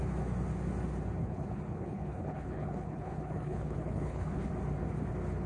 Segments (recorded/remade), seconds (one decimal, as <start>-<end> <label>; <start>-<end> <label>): 0.0-1.2 recorded; 1.2-4.5 remade; 4.5-5.5 recorded